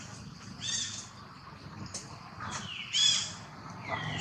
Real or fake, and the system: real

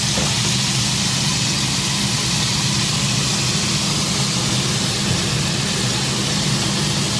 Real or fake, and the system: real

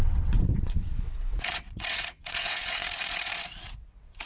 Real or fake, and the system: fake, vocoder, WaveNeXt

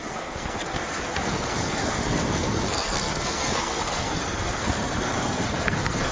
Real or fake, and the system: fake, codec, SNAC